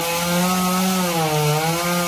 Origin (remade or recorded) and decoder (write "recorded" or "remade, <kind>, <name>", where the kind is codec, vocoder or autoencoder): recorded